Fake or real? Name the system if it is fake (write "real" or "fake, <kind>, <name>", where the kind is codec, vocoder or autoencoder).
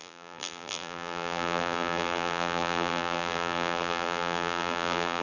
fake, vocoder, BigVGAN v2